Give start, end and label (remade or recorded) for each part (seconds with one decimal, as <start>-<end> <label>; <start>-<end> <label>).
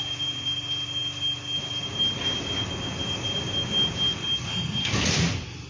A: 0.0-5.7 recorded